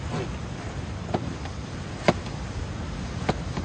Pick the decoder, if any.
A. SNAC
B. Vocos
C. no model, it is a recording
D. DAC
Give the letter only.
C